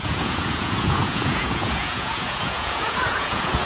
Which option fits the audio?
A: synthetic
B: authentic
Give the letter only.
A